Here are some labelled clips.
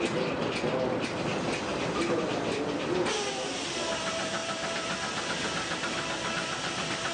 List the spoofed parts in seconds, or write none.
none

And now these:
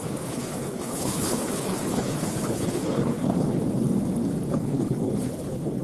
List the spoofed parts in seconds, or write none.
0.0-3.6 (codec, HILCodec); 4.5-5.8

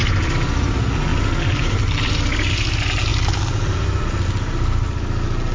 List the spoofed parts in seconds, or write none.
0.0-0.7 (vocoder, BigVGAN v2); 1.1-2.1; 3.1-4.0

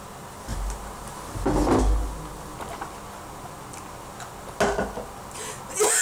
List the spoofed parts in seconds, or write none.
none

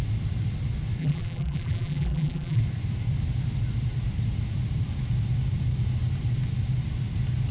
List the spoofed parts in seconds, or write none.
1.0-2.6 (vocoder, BigVGAN v2)